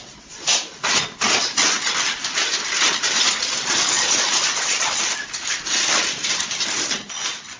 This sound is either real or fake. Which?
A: real